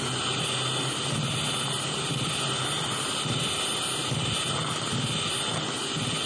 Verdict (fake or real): real